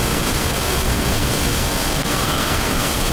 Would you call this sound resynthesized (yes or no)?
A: yes